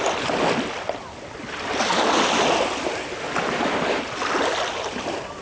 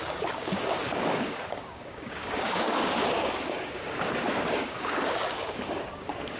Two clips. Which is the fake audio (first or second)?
second